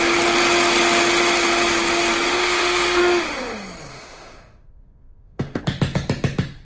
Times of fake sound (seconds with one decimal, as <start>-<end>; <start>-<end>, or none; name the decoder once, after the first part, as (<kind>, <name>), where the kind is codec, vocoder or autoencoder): 2.4-3.0 (autoencoder, DAC-VAE); 3.9-5.6